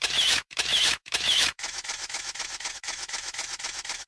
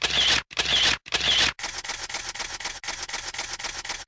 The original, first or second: second